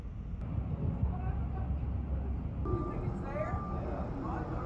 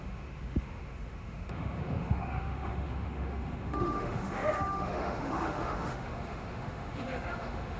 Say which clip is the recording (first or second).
first